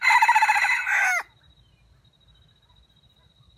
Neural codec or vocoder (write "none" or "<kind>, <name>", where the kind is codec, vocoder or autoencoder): none